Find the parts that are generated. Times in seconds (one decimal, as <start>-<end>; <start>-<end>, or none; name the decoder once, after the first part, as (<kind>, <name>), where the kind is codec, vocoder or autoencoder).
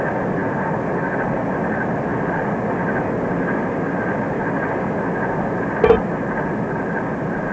none